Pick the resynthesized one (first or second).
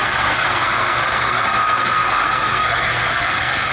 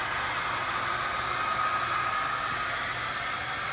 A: first